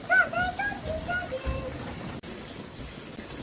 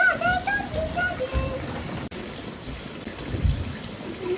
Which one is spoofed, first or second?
second